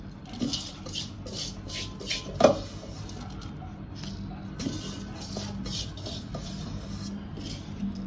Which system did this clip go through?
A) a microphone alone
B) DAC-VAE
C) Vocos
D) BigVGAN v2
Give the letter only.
A